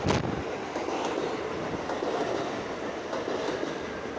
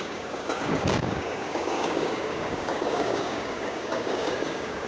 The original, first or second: first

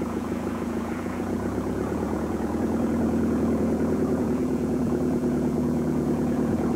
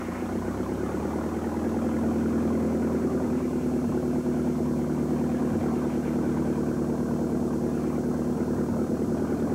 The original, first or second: second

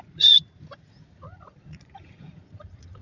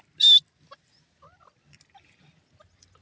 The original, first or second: second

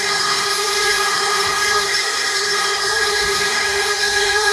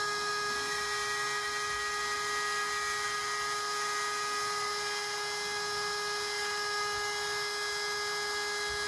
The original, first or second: second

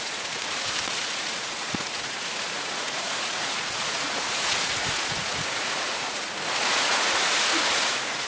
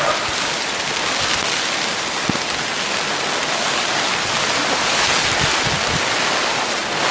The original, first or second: second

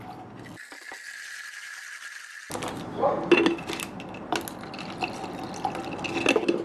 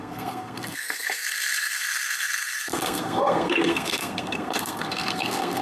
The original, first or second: first